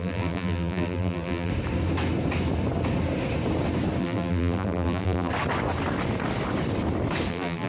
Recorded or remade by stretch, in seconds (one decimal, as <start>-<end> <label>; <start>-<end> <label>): 0.0-1.5 remade; 1.5-4.0 recorded; 4.0-5.3 remade; 5.3-7.3 recorded; 7.3-7.7 remade